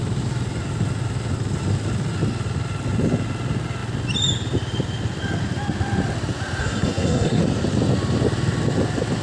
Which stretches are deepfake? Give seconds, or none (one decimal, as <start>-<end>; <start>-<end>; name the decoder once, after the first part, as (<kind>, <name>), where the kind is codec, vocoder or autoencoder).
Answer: 6.6-7.4 (codec, SNAC)